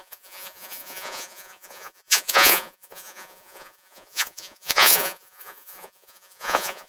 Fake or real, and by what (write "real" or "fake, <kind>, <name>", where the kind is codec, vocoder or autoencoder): fake, vocoder, Vocos